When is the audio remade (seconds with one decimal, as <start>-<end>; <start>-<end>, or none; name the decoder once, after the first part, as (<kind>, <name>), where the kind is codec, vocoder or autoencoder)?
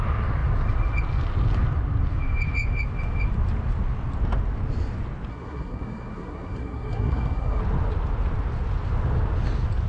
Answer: 5.3-7.6 (codec, SNAC)